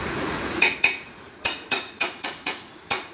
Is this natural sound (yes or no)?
no